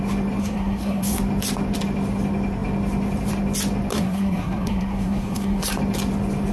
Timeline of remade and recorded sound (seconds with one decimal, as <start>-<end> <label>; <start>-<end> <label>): 0.0-0.4 recorded; 0.4-1.2 remade; 1.2-3.9 recorded; 3.9-5.6 remade; 5.6-6.5 recorded

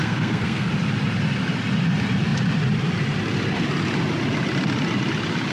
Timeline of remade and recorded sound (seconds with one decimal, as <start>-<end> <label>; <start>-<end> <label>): 0.0-0.7 remade; 0.7-5.5 recorded

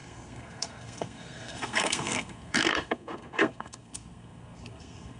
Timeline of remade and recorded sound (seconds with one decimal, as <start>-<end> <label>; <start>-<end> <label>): 0.0-5.2 remade